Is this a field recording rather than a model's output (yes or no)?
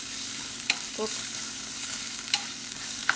no